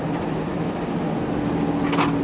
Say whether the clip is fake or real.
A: real